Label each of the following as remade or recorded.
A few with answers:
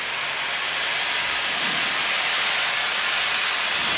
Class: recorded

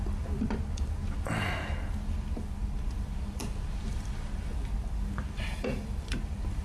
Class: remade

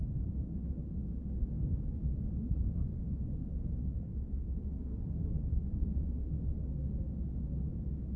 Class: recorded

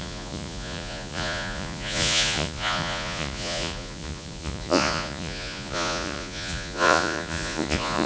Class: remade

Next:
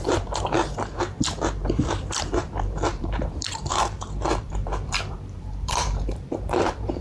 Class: remade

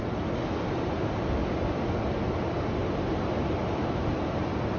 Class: recorded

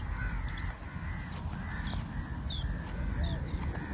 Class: recorded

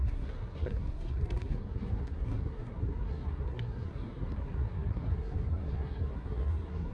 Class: remade